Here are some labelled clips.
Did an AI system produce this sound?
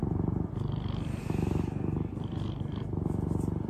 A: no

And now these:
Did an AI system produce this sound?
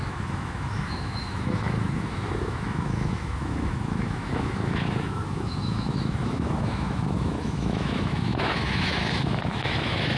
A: yes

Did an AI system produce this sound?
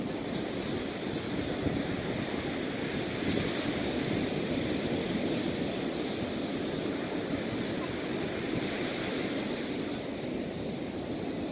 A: no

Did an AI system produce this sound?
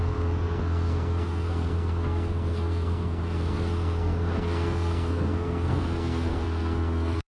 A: yes